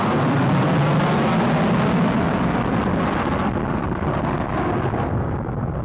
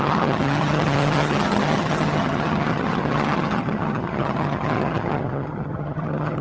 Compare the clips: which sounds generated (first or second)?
second